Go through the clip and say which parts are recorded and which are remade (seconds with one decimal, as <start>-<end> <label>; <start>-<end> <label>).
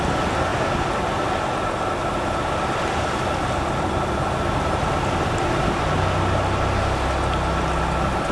0.0-8.3 recorded